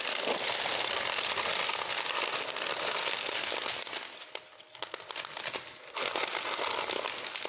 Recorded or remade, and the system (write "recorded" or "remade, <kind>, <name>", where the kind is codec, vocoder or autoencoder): recorded